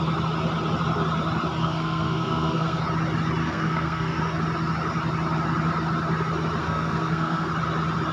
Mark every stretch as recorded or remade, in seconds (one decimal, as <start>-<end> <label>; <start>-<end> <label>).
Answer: 0.0-1.6 recorded; 1.6-2.8 remade; 2.8-3.4 recorded; 3.4-4.2 remade; 4.2-6.6 recorded; 6.6-7.5 remade; 7.5-8.1 recorded